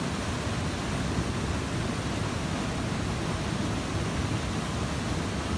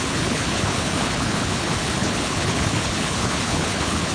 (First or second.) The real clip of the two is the first